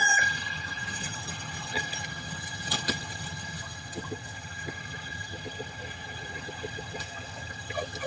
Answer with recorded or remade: remade